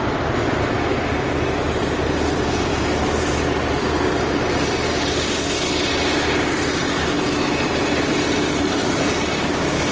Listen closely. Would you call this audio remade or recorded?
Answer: recorded